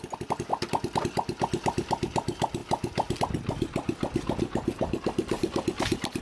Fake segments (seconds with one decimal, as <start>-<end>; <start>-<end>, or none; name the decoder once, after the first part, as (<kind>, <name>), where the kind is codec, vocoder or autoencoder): none